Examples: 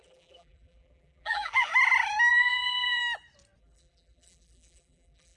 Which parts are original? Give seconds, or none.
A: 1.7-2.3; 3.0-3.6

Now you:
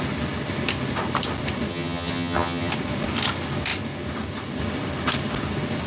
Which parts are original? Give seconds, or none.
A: 0.0-1.7; 2.7-5.9

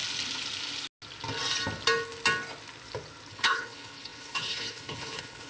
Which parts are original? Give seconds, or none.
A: 0.0-3.3

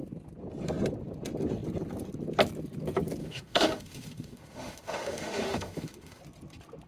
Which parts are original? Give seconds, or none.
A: 0.0-3.2; 6.2-6.9

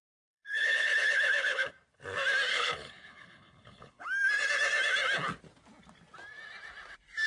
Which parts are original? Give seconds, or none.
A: 1.7-2.5; 4.0-7.3

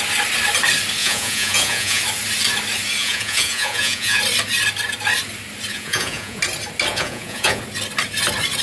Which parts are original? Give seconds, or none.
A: 0.0-1.0; 2.0-3.0; 4.2-5.7; 6.4-6.9; 7.6-8.6

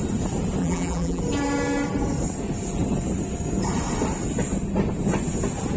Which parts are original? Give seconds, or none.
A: 0.0-0.6; 1.2-5.8

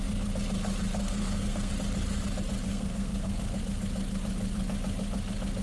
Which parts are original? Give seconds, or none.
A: 0.0-1.0; 1.7-2.7; 3.6-5.6